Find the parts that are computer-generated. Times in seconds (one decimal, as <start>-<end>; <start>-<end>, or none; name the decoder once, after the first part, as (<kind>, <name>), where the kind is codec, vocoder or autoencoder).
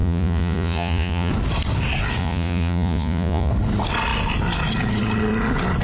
0.0-1.3 (vocoder, Vocos); 2.2-3.5